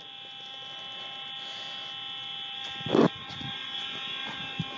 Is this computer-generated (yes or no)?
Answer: no